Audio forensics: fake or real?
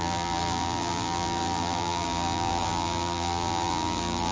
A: fake